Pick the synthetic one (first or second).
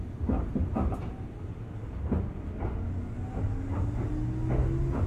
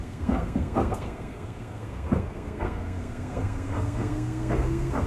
second